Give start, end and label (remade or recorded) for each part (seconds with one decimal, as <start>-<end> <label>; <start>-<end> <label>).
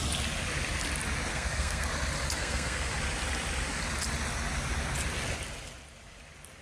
0.0-1.3 recorded; 1.3-1.9 remade; 1.9-2.4 recorded; 2.4-2.9 remade; 2.9-6.6 recorded